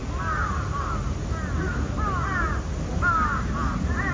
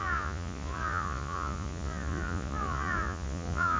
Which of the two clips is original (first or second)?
first